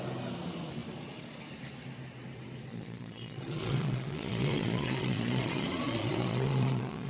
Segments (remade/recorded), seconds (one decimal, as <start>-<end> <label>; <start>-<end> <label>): 0.0-2.7 recorded; 2.7-7.1 remade